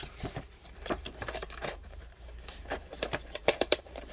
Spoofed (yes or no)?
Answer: yes